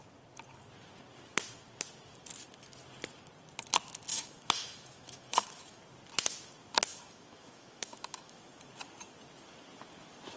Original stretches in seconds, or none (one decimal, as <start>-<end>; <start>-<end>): 0.0-4.1; 5.8-6.9; 8.4-10.4